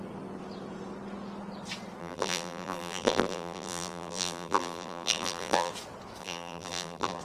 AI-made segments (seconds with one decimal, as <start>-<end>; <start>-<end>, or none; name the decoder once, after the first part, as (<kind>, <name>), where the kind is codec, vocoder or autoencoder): 2.0-5.7 (vocoder, BigVGAN v2); 6.2-7.2